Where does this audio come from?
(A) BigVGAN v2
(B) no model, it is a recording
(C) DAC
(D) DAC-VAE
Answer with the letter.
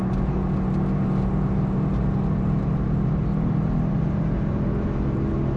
B